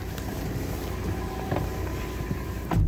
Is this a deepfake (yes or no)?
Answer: yes